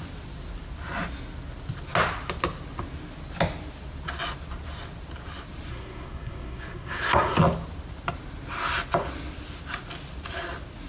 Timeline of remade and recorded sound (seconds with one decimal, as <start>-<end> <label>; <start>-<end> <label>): 0.0-5.7 recorded; 5.7-7.4 remade; 7.4-10.9 recorded